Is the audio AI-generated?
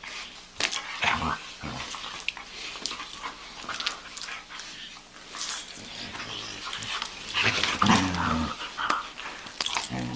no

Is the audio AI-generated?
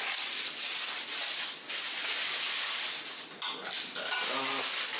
no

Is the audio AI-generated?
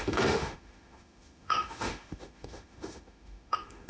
yes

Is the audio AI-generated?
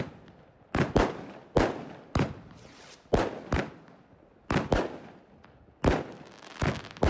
no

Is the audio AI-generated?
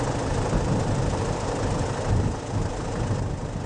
no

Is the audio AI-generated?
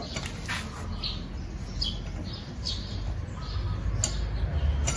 no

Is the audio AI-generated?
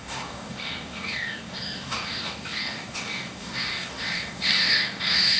yes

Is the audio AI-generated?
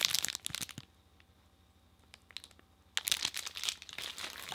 no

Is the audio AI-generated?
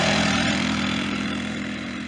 yes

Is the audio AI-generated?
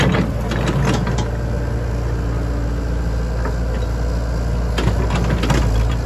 no